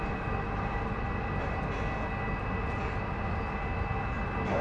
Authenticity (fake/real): real